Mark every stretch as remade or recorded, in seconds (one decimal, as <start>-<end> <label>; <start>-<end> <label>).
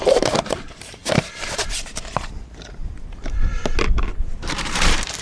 0.0-1.0 remade; 1.0-4.0 recorded; 4.0-5.2 remade